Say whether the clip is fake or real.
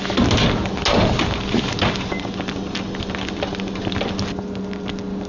real